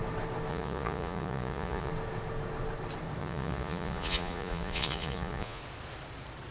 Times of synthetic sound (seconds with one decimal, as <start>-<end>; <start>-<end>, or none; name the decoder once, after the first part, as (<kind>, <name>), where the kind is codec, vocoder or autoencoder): 0.5-1.9 (vocoder, Vocos); 3.2-5.6